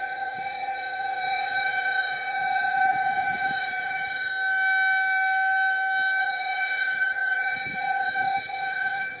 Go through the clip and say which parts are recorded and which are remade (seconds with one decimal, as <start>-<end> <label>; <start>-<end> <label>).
0.0-4.3 remade; 4.3-6.2 recorded; 6.2-9.2 remade